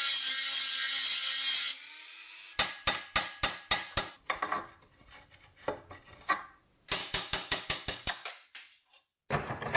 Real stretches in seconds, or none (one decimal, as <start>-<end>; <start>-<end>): 0.0-7.0; 8.3-9.8